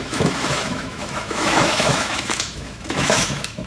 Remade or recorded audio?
remade